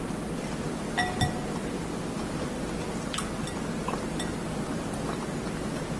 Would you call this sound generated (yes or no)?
no